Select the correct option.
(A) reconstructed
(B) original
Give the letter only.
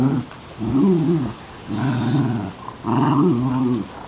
B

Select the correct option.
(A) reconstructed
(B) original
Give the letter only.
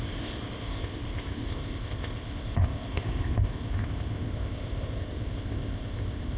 A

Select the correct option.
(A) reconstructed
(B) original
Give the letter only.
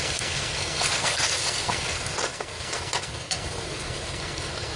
A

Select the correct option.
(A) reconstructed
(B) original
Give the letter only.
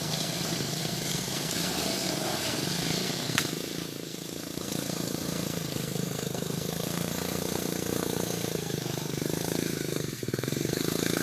A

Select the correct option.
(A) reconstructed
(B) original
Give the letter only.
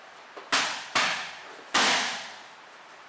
B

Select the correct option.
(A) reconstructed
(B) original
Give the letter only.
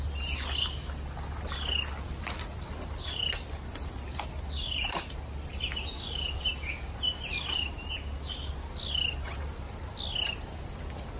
B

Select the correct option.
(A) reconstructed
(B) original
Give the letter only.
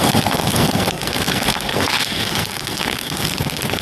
A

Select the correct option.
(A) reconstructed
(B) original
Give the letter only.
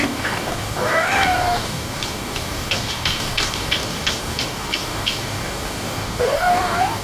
A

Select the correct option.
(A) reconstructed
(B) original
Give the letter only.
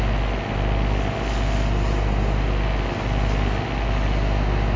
B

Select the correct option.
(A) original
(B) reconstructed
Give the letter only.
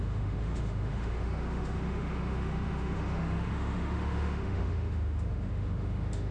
B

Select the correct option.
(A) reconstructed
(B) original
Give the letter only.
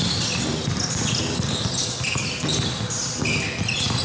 B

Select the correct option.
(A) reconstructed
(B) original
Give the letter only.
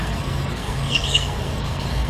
A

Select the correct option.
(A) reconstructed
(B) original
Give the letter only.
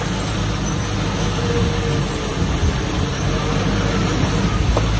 B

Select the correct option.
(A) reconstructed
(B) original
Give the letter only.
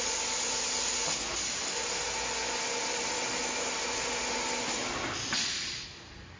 B